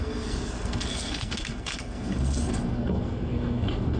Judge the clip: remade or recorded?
remade